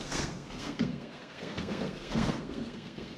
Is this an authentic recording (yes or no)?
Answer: no